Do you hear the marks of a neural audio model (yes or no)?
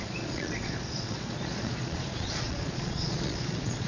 yes